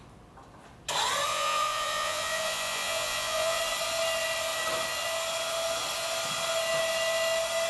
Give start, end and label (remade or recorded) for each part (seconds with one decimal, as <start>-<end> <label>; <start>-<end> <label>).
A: 0.0-1.3 recorded; 1.3-3.6 remade; 3.6-7.7 recorded